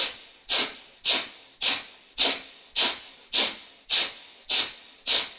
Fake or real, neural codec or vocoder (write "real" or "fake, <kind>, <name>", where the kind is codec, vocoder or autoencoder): real